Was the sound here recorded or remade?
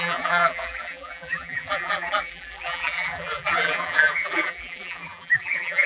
remade